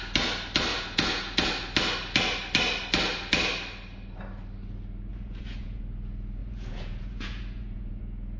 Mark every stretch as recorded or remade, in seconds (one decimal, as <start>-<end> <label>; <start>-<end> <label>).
0.0-0.7 recorded; 0.7-1.5 remade; 1.5-5.1 recorded; 5.1-5.8 remade; 5.8-6.4 recorded; 6.4-8.0 remade; 8.0-8.4 recorded